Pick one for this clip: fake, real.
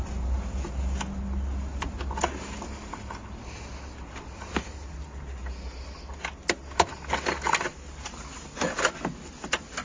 real